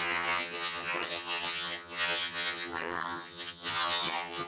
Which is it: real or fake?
fake